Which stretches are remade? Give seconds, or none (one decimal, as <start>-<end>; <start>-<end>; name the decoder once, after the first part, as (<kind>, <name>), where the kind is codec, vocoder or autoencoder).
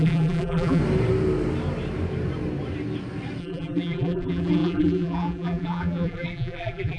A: 0.0-0.8 (vocoder, BigVGAN v2); 3.4-7.0